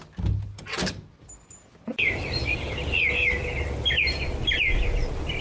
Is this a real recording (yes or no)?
yes